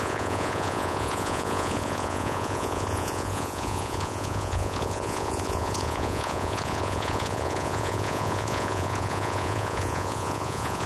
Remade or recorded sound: remade